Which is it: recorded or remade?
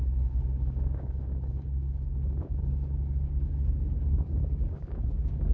remade